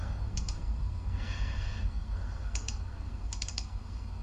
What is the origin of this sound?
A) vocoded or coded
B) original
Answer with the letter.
A